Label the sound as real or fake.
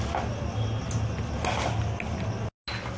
real